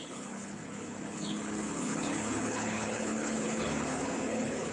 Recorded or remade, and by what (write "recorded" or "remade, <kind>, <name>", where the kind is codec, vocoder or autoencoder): remade, codec, HILCodec